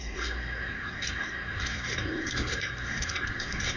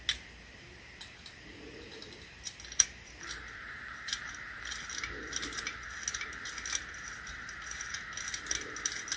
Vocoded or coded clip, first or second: first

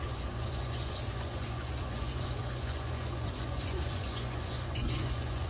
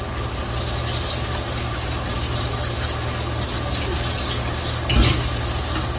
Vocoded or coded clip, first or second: first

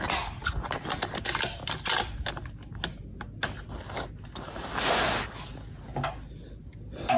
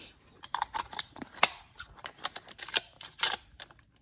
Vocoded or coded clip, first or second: second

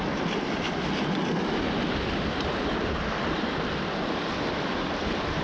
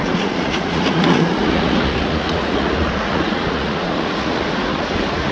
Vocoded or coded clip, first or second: second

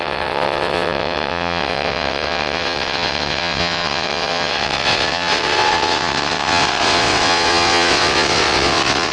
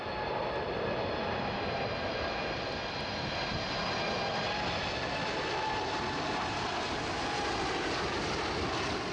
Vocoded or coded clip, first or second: first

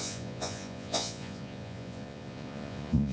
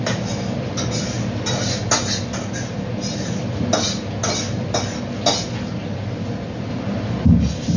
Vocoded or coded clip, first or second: first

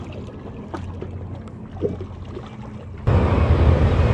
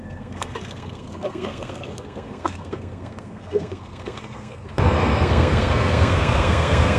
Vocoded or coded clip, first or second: second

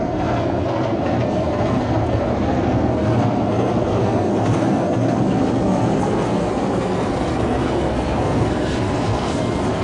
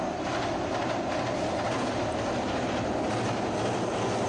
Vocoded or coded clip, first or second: first